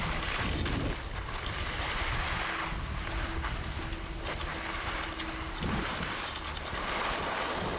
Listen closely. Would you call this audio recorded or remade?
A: recorded